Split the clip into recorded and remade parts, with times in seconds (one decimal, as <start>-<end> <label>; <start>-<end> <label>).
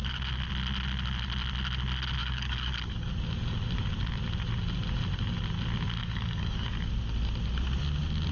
0.0-2.2 recorded; 2.2-3.1 remade; 3.1-6.0 recorded; 6.0-6.9 remade; 6.9-8.3 recorded